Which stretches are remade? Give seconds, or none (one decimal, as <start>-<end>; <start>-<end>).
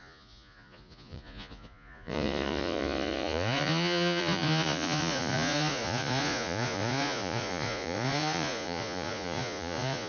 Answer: 0.0-10.1